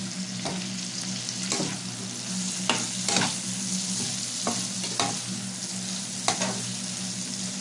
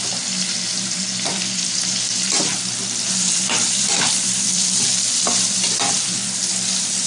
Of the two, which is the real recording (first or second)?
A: first